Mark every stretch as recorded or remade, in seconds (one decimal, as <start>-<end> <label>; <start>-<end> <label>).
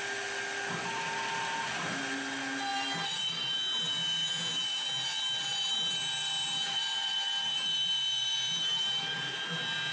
0.0-2.7 recorded; 2.7-3.8 remade; 3.8-5.5 recorded; 5.5-9.4 remade; 9.4-9.9 recorded